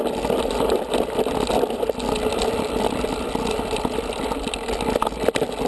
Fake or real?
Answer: real